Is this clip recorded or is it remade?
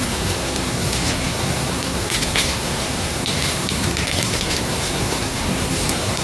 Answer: remade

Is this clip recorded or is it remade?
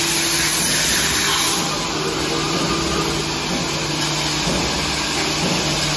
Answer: recorded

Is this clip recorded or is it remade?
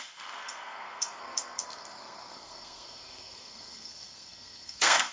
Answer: remade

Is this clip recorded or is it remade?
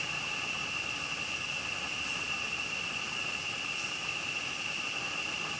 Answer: recorded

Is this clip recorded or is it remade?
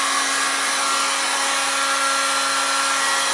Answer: recorded